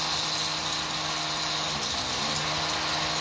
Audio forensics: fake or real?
real